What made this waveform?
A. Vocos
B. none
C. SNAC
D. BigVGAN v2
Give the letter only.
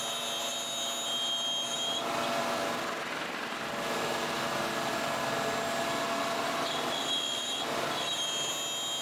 B